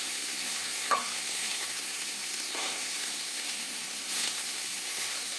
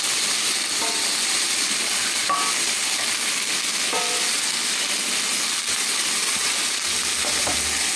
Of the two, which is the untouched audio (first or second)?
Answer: second